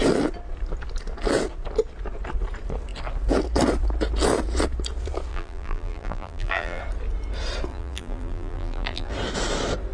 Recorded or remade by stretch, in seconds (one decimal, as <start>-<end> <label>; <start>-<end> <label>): 0.0-5.3 recorded; 5.3-6.8 remade; 6.8-7.7 recorded; 7.7-9.1 remade; 9.1-9.9 recorded